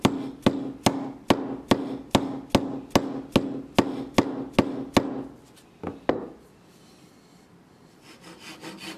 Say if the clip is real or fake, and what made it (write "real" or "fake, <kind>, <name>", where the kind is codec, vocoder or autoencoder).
real